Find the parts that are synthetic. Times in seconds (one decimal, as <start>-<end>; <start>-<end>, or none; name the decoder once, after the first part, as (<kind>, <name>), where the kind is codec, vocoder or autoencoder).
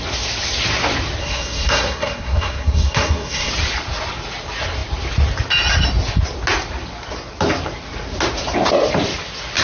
1.2-3.5 (codec, SNAC)